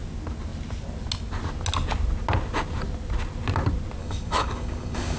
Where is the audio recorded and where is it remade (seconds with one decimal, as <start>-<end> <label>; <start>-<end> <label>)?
0.0-4.0 recorded; 4.0-5.2 remade